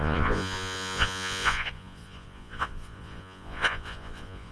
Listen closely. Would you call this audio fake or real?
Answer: fake